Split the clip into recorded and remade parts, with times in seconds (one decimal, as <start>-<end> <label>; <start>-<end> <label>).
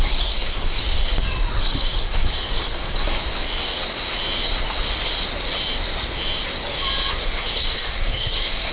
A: 0.0-0.8 remade; 0.8-1.6 recorded; 1.6-3.2 remade; 3.2-7.1 recorded; 7.1-8.7 remade